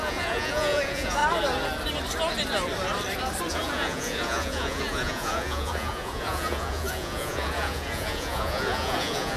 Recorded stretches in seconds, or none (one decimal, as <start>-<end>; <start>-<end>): 1.2-3.5